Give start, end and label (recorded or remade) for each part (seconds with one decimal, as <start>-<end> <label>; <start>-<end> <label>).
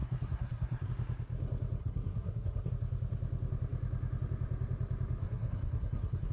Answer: 0.0-0.9 remade; 0.9-1.8 recorded; 1.8-2.7 remade; 2.7-5.2 recorded; 5.2-6.3 remade